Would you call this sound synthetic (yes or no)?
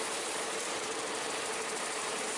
yes